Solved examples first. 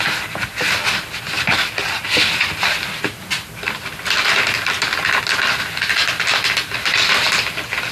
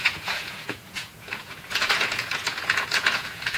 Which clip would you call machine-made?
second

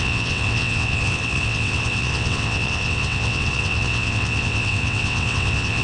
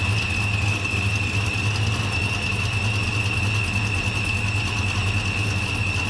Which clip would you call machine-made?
first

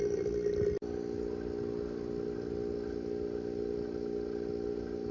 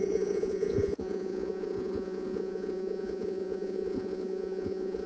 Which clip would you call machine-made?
second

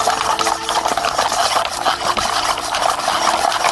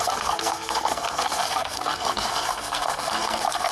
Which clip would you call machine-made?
second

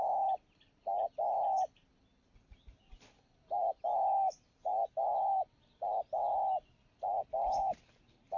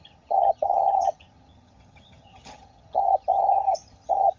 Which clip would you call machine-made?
second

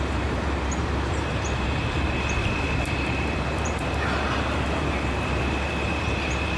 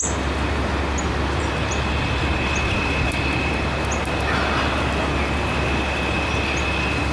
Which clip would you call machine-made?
first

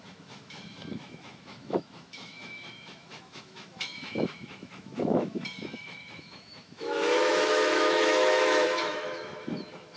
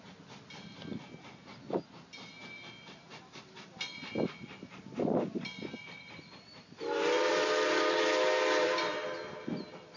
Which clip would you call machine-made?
first